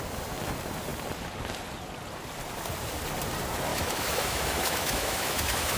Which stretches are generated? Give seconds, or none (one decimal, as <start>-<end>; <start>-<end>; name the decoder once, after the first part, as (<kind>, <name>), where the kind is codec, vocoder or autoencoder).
3.7-5.8 (autoencoder, DAC-VAE)